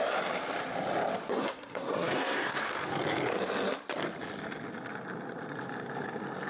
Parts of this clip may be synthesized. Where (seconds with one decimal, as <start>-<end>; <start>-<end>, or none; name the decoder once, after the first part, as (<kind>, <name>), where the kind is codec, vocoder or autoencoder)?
1.4-2.6 (codec, SNAC)